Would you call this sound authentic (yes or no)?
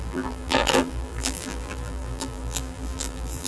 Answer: no